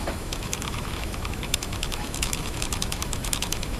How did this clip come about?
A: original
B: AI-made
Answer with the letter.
B